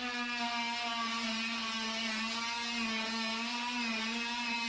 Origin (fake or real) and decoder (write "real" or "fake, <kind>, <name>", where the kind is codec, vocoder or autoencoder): real